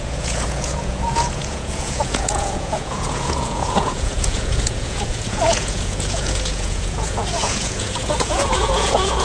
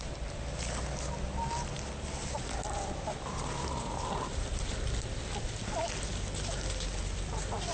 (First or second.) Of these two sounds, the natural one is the second